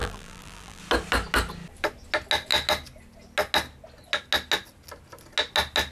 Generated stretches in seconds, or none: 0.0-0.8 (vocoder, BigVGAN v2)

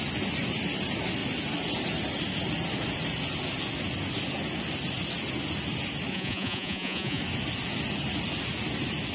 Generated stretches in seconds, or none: 6.1-7.2 (vocoder, Vocos)

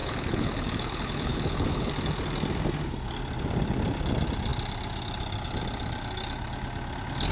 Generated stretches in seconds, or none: 0.0-1.9 (codec, HILCodec)

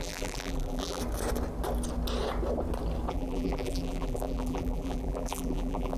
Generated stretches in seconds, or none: 0.0-1.0 (vocoder, BigVGAN v2); 3.1-6.0

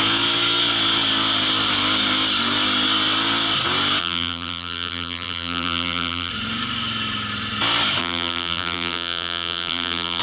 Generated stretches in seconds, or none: 4.0-6.3 (vocoder, BigVGAN v2); 8.0-10.2

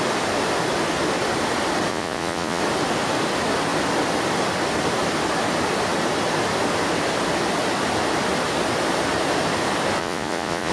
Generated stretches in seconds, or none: 1.9-2.6 (vocoder, Vocos); 10.0-10.7

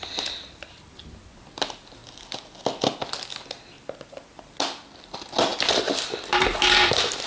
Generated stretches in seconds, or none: 5.5-7.3 (vocoder, BigVGAN v2)

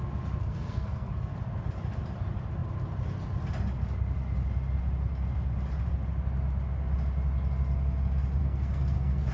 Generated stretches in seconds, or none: 0.4-1.3 (codec, SNAC); 8.4-9.3